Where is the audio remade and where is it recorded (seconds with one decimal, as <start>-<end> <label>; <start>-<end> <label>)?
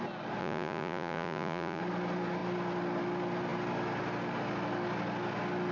0.0-0.4 recorded; 0.4-1.8 remade; 1.8-5.7 recorded